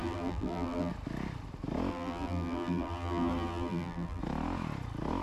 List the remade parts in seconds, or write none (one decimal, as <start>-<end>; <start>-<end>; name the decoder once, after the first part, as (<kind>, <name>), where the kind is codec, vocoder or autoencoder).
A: 0.0-0.9 (vocoder, BigVGAN v2); 1.9-4.2